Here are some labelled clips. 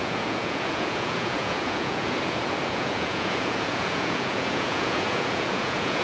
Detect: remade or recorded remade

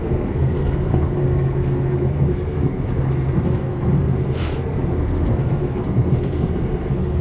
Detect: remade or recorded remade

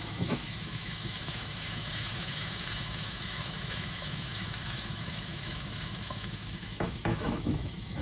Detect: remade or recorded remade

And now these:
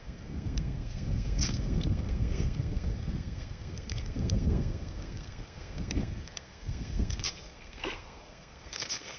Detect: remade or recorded remade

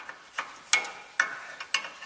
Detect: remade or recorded recorded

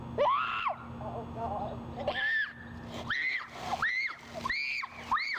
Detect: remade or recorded recorded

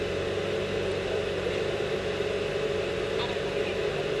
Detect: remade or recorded recorded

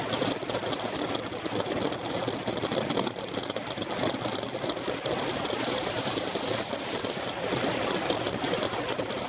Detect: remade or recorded recorded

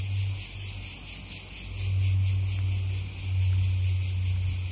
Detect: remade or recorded recorded